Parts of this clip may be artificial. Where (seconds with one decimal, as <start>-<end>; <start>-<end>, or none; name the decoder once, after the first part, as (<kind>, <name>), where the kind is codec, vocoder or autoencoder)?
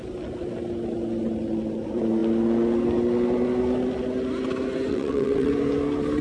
4.9-5.5 (vocoder, WaveNeXt)